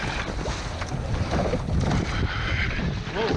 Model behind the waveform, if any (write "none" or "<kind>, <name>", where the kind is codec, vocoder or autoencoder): none